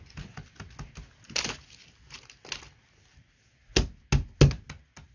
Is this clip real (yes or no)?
yes